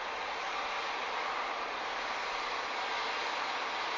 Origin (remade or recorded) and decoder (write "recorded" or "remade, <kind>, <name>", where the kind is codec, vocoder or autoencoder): recorded